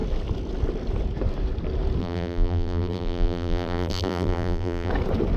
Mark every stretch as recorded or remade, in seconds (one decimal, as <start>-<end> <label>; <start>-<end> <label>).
0.0-2.0 recorded; 2.0-4.9 remade; 4.9-5.4 recorded